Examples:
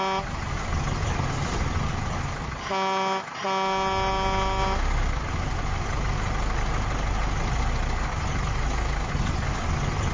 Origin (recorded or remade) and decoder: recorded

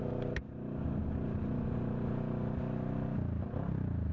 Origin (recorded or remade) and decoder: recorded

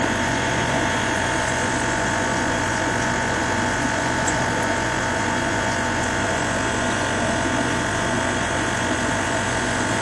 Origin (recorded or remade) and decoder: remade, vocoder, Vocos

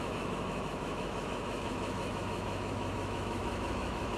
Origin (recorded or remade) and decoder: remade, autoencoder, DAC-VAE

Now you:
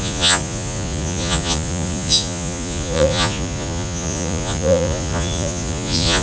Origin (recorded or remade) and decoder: remade, vocoder, Vocos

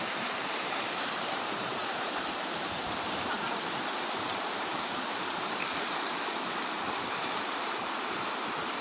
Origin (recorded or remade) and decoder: remade, vocoder, BigVGAN v2